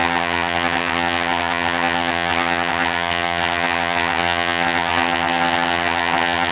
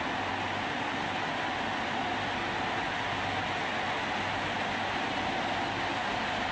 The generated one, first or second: first